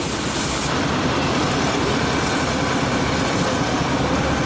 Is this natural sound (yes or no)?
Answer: yes